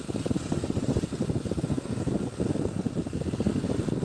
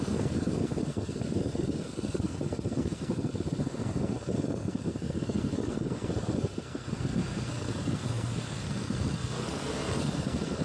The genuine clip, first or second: first